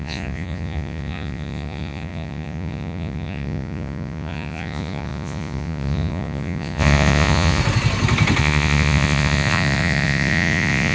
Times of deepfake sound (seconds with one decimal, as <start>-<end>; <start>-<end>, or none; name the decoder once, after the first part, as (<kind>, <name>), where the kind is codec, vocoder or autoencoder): 0.0-7.6 (vocoder, Vocos); 8.4-10.9